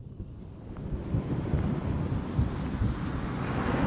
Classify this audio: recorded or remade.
recorded